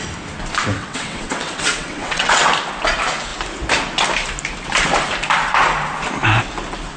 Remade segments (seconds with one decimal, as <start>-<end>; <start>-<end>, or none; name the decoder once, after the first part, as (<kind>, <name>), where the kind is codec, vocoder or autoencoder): 0.8-2.5 (vocoder, WaveNeXt)